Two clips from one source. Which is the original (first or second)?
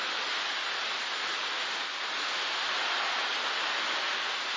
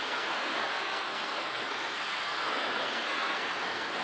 first